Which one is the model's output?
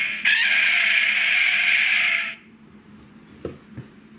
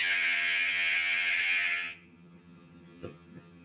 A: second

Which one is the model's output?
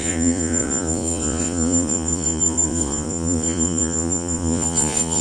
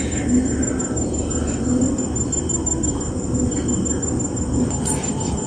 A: first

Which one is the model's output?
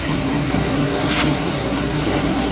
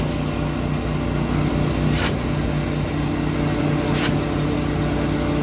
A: first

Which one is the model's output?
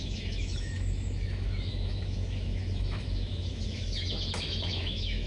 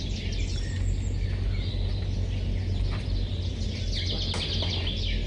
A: first